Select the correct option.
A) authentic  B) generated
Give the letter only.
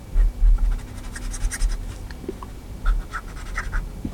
A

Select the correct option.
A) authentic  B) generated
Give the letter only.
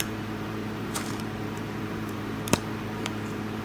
B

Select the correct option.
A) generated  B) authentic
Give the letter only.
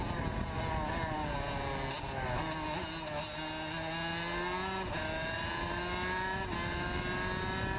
B